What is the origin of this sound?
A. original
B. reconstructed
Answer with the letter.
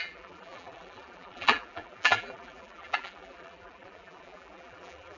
B